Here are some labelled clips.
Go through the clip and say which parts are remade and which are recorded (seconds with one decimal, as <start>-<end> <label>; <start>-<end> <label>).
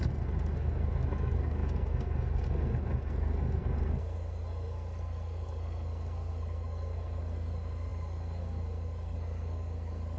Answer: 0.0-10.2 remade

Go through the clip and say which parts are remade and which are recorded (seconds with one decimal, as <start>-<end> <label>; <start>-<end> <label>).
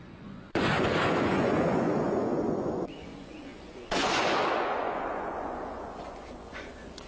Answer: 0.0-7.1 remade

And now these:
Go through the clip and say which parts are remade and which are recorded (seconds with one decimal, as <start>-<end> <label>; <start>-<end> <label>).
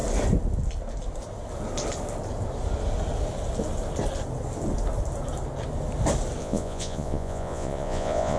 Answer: 0.0-6.4 recorded; 6.4-8.4 remade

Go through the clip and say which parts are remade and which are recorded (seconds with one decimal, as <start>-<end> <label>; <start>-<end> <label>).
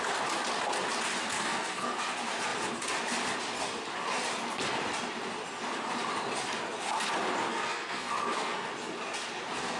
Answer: 0.0-1.4 recorded; 1.4-2.0 remade; 2.0-7.5 recorded; 7.5-8.7 remade; 8.7-9.8 recorded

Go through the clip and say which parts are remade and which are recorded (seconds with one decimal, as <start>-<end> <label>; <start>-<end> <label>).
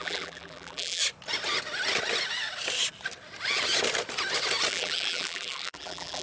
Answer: 0.0-1.0 remade; 1.0-4.7 recorded; 4.7-6.2 remade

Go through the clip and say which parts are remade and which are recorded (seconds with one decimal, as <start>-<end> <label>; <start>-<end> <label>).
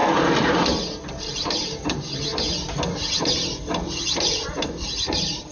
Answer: 0.0-1.2 recorded; 1.2-2.3 remade; 2.3-4.2 recorded; 4.2-5.5 remade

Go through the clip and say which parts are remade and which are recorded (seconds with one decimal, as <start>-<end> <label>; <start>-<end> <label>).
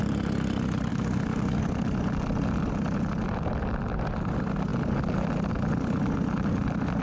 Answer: 0.0-0.9 recorded; 0.9-1.6 remade; 1.6-7.0 recorded